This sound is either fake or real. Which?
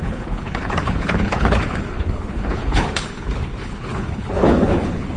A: fake